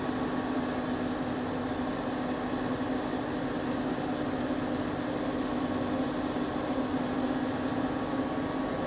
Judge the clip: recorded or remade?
recorded